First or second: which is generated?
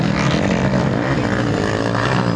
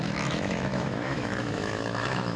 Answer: second